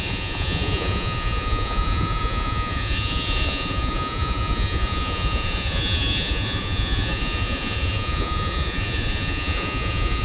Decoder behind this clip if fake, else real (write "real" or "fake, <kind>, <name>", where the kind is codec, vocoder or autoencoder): fake, vocoder, Vocos